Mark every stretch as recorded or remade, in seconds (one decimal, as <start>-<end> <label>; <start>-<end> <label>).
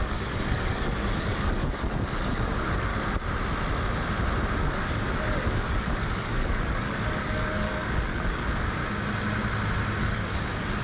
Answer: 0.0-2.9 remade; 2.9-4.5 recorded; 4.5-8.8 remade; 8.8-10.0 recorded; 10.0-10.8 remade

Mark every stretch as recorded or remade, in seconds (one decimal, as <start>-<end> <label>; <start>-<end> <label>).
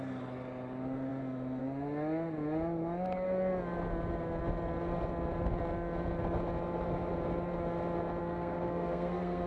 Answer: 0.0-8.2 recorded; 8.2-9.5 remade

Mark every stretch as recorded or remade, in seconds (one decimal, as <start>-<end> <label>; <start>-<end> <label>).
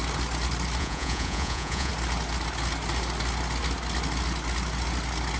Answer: 0.0-0.8 recorded; 0.8-1.9 remade; 1.9-5.4 recorded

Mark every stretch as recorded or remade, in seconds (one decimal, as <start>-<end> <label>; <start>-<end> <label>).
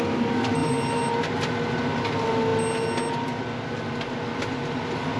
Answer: 0.0-5.2 recorded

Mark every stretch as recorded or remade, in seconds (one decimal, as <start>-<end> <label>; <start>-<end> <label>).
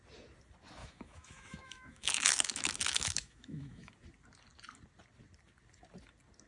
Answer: 0.0-0.8 recorded; 0.8-3.9 remade; 3.9-6.5 recorded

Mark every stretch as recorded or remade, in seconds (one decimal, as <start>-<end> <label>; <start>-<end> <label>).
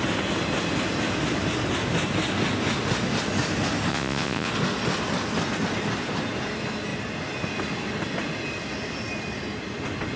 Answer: 0.0-3.9 recorded; 3.9-4.5 remade; 4.5-10.2 recorded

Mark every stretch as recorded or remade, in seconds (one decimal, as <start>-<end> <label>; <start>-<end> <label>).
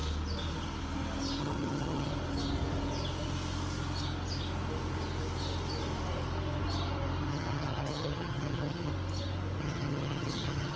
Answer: 0.0-1.4 recorded; 1.4-2.1 remade; 2.1-7.3 recorded; 7.3-8.9 remade; 8.9-9.6 recorded; 9.6-10.8 remade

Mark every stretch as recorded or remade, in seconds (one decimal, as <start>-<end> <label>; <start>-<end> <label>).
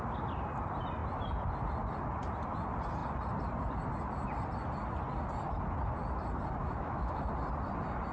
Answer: 0.0-6.6 recorded; 6.6-7.3 remade; 7.3-8.1 recorded